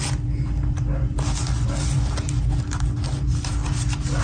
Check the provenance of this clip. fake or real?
real